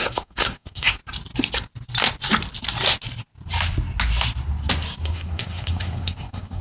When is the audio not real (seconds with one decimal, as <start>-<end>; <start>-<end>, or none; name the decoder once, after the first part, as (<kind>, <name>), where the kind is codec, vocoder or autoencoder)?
0.0-1.0 (codec, SNAC); 5.0-6.6